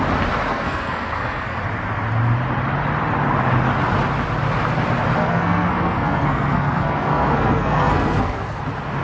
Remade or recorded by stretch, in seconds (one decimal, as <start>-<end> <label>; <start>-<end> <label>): 0.0-0.5 recorded; 0.5-1.6 remade; 1.6-5.2 recorded; 5.2-8.6 remade; 8.6-9.0 recorded